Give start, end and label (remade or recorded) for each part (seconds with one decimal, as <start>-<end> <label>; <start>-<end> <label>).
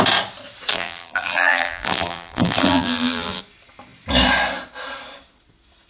0.0-0.7 recorded; 0.7-3.4 remade; 3.4-5.9 recorded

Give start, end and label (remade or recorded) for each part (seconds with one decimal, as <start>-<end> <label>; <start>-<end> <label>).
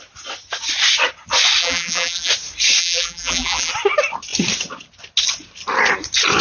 0.0-1.6 recorded; 1.6-2.3 remade; 2.3-2.8 recorded; 2.8-3.7 remade; 3.7-6.4 recorded